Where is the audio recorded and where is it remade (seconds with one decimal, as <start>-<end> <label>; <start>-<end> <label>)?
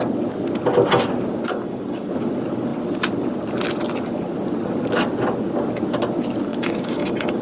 0.0-1.5 recorded; 1.5-2.1 remade; 2.1-6.5 recorded; 6.5-7.4 remade